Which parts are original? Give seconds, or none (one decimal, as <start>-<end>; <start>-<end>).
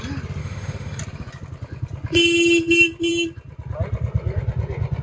0.0-0.4; 1.0-5.0